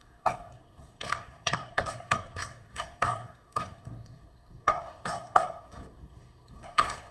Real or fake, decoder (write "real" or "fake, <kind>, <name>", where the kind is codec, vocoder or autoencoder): fake, codec, SNAC